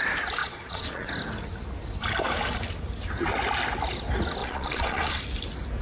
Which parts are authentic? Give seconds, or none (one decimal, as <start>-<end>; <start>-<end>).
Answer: 0.0-0.4; 1.1-4.4; 5.2-5.8